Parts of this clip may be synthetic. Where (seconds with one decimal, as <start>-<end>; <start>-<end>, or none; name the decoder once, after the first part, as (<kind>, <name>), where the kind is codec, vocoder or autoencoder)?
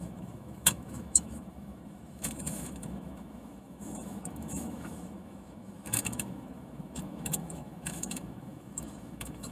0.0-9.5 (autoencoder, DAC-VAE)